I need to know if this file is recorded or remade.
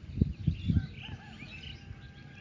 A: recorded